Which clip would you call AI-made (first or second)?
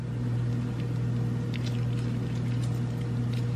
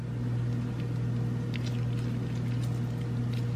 first